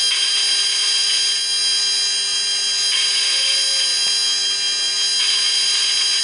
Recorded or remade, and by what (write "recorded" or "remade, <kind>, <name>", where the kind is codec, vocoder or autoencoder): recorded